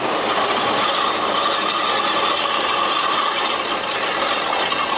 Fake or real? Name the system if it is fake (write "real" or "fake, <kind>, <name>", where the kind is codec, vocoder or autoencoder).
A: real